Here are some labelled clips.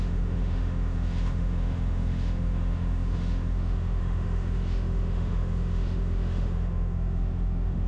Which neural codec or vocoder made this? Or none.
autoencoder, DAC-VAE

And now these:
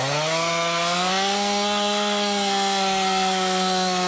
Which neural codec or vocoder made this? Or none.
codec, SNAC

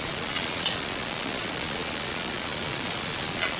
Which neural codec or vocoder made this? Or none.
vocoder, Vocos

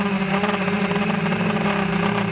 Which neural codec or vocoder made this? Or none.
none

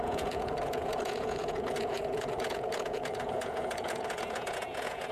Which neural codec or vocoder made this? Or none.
vocoder, Vocos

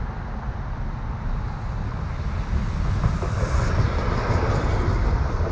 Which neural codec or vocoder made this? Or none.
none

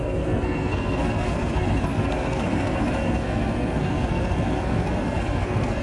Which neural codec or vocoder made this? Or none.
codec, SNAC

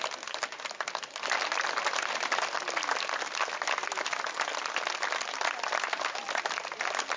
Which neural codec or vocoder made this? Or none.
none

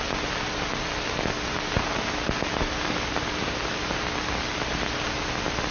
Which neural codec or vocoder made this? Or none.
none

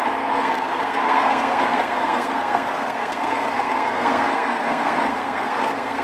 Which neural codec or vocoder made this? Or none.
codec, SNAC